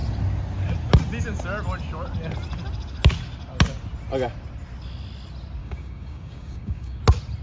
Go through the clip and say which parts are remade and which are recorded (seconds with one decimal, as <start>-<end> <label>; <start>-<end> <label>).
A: 0.0-5.6 recorded; 5.6-7.0 remade; 7.0-7.4 recorded